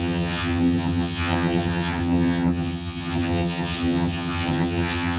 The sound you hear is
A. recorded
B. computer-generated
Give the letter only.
B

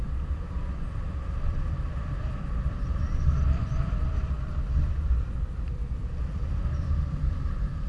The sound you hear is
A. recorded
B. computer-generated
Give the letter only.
B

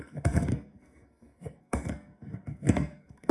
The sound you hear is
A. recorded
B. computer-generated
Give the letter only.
B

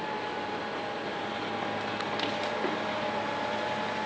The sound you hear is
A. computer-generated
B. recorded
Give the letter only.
B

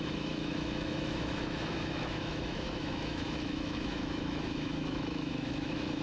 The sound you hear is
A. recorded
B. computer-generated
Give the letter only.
B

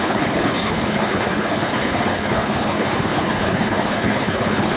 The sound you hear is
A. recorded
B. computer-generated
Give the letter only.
B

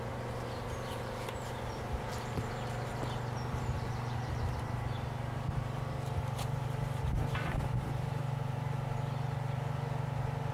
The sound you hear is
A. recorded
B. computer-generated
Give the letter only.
B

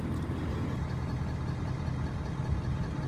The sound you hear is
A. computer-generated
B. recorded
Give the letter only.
B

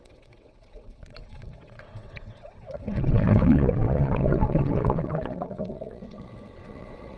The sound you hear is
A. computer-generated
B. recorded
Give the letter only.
A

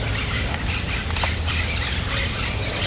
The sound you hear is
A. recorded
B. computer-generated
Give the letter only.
A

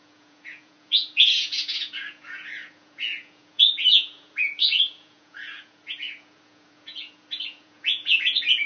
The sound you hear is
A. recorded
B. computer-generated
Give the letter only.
B